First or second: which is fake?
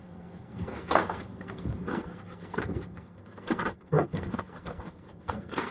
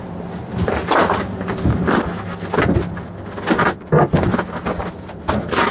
first